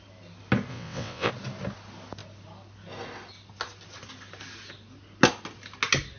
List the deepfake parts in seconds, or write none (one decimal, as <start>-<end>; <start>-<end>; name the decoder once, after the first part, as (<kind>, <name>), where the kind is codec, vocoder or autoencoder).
0.7-1.3 (vocoder, WaveNeXt)

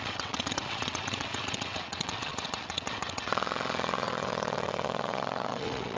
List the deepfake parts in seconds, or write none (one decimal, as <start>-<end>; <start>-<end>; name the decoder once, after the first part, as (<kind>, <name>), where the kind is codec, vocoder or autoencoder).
0.0-6.0 (vocoder, WaveNeXt)